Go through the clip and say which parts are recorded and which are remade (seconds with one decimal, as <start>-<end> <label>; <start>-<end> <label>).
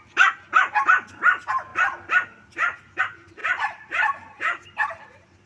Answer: 0.0-3.4 recorded; 3.4-5.5 remade